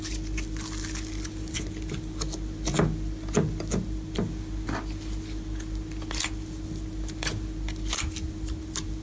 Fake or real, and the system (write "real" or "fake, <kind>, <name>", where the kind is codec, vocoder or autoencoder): real